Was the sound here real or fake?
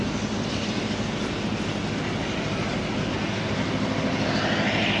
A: real